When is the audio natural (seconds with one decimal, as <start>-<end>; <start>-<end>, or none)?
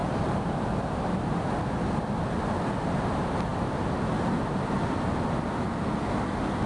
1.4-6.7